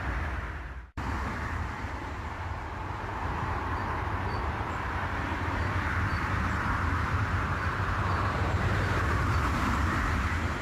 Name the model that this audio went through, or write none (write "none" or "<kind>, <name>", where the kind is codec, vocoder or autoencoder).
vocoder, BigVGAN v2